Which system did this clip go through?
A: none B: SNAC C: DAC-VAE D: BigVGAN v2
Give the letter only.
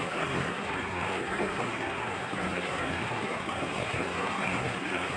B